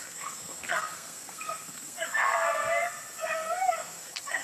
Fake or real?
fake